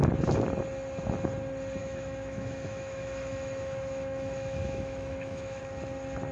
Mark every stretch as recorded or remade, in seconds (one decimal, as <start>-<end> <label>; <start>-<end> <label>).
0.0-1.8 recorded; 1.8-5.6 remade; 5.6-6.3 recorded